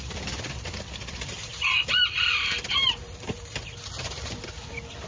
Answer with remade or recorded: remade